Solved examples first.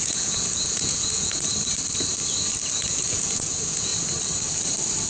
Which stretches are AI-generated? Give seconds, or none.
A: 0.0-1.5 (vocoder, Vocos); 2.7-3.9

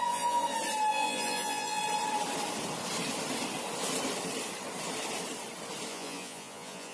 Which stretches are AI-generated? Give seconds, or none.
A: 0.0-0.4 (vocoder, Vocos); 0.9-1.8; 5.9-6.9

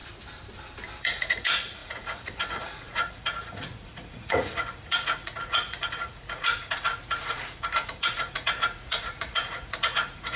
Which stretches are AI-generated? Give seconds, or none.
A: 1.0-10.4 (vocoder, Vocos)

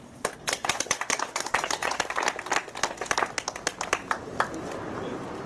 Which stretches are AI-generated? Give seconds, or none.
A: 0.4-2.1 (vocoder, Vocos)

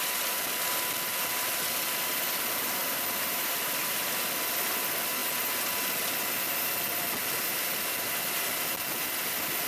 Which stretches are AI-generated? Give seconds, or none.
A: none